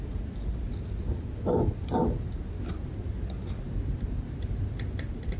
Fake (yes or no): no